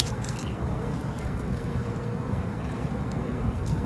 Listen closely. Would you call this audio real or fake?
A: fake